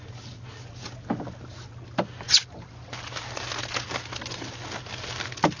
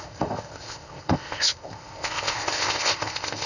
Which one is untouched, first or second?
first